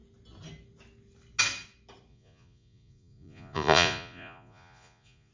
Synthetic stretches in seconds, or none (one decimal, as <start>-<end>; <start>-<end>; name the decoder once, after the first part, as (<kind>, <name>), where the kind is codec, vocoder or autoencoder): 2.1-5.3 (vocoder, Vocos)